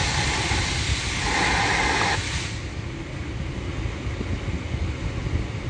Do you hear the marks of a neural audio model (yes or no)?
no